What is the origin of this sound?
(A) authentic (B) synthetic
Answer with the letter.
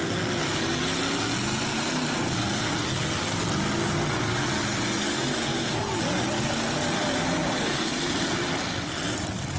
A